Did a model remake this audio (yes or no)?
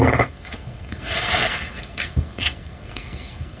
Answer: yes